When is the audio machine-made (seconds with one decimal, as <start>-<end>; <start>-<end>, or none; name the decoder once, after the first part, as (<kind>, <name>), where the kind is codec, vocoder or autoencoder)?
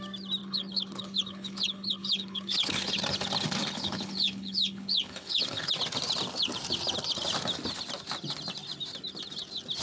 0.4-3.0 (codec, HILCodec); 3.6-5.7